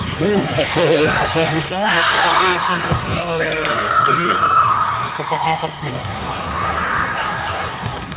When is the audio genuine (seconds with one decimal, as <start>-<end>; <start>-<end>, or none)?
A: none